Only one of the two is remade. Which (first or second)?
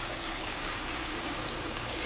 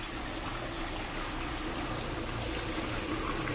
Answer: first